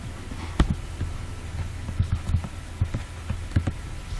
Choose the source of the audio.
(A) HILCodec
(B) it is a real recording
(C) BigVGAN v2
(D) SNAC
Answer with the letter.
B